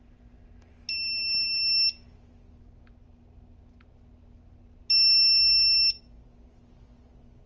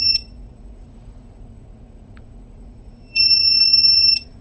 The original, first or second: first